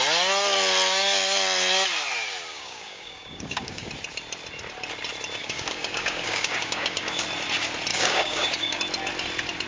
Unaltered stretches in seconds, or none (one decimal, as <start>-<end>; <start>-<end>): 0.0-2.5; 3.9-5.4; 7.2-7.9; 8.8-9.7